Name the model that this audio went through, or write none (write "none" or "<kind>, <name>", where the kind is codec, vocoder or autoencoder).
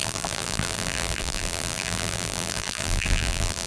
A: vocoder, BigVGAN v2